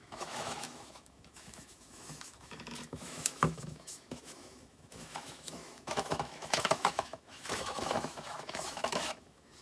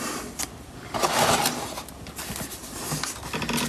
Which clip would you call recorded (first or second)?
second